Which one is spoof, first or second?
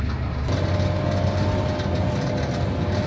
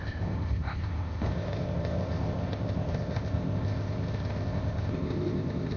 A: second